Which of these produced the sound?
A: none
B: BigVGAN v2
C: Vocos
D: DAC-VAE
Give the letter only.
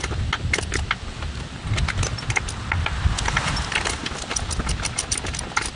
A